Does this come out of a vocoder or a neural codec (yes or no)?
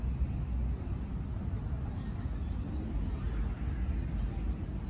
no